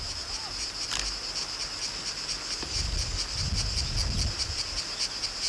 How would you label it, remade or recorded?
recorded